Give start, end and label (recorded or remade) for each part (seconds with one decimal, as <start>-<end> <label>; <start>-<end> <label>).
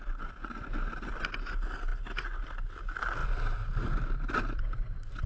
0.0-5.3 recorded